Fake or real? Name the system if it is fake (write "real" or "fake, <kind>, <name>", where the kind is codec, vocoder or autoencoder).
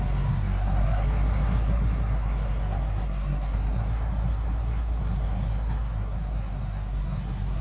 fake, codec, SNAC